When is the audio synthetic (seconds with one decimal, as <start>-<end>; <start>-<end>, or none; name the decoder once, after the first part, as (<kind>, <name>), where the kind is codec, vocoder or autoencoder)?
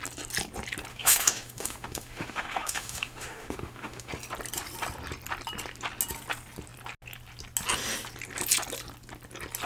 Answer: 0.9-4.1 (autoencoder, DAC-VAE)